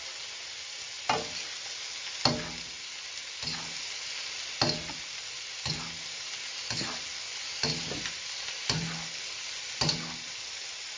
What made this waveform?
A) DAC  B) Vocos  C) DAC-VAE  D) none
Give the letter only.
D